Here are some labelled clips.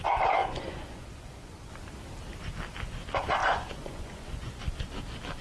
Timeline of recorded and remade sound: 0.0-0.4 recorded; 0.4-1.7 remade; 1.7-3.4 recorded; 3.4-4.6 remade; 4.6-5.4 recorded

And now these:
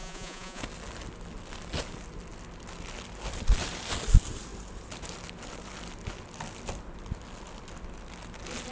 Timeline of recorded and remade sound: 0.0-0.6 remade; 0.6-8.7 recorded

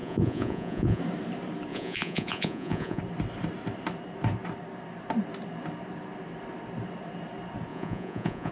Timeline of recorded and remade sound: 0.0-1.0 remade; 1.0-1.7 recorded; 1.7-3.0 remade; 3.0-7.7 recorded; 7.7-8.5 remade

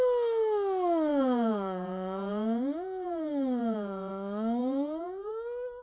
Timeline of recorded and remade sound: 0.0-1.1 recorded; 1.1-4.1 remade; 4.1-4.6 recorded; 4.6-5.3 remade; 5.3-5.8 recorded

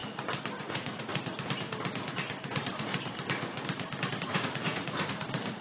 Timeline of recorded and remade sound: 0.0-0.6 recorded; 0.6-1.1 remade; 1.1-2.5 recorded; 2.5-2.9 remade; 2.9-4.2 recorded; 4.2-5.6 remade

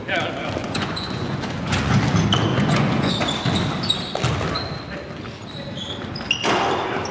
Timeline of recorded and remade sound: 0.0-0.6 recorded; 0.6-2.0 remade; 2.0-2.5 recorded; 2.5-3.1 remade; 3.1-7.1 recorded

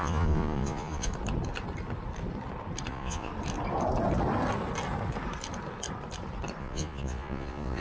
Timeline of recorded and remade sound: 0.0-1.1 remade; 1.1-2.9 recorded; 2.9-3.3 remade; 3.3-6.6 recorded; 6.6-7.8 remade